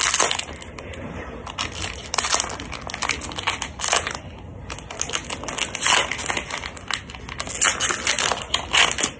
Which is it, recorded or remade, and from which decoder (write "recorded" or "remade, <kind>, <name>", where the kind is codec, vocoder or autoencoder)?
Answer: recorded